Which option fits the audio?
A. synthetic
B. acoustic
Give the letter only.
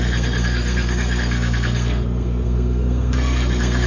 A